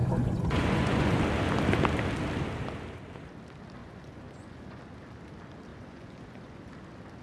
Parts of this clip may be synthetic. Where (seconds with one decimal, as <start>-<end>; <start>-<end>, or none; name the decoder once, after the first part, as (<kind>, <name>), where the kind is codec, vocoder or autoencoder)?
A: 0.0-1.2 (vocoder, Vocos); 3.8-4.8; 5.7-6.7